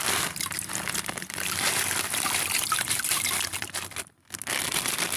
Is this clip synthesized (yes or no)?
no